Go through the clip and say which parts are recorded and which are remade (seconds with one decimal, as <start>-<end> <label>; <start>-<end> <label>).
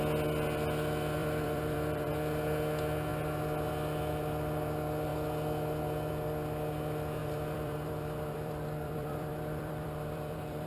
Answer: 0.0-1.2 recorded; 1.2-2.1 remade; 2.1-7.2 recorded; 7.2-10.7 remade